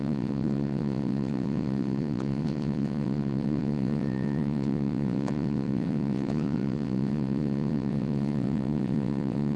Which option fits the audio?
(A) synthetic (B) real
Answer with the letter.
A